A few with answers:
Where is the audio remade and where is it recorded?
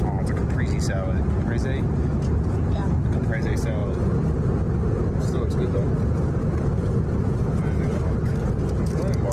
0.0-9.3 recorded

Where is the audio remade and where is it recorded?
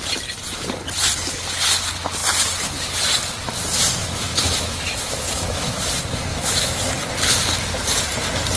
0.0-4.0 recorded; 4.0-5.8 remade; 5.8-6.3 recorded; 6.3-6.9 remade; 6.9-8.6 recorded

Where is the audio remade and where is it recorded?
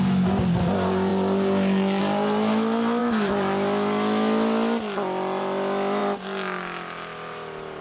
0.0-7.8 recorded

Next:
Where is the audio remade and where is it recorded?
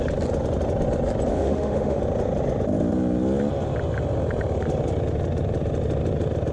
0.0-1.3 recorded; 1.3-2.0 remade; 2.0-6.5 recorded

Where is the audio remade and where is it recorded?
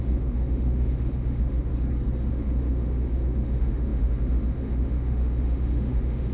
0.0-1.7 remade; 1.7-2.3 recorded; 2.3-6.3 remade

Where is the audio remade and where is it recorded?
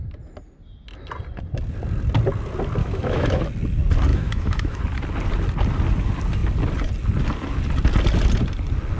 0.0-2.8 recorded; 2.8-3.4 remade; 3.4-4.1 recorded; 4.1-4.8 remade; 4.8-9.0 recorded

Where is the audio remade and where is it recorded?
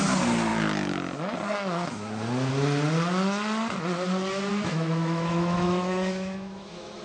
0.0-4.5 recorded; 4.5-7.0 remade